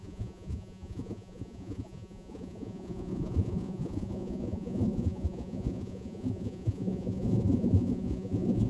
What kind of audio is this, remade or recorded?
remade